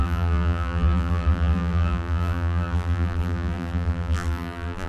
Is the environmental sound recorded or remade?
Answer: remade